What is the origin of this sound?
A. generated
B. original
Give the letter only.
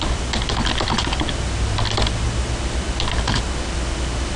B